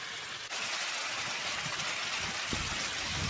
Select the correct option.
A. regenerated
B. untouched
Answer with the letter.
B